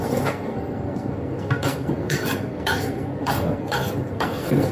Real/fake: fake